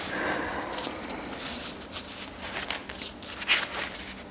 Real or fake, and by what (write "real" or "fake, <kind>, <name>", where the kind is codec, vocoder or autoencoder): real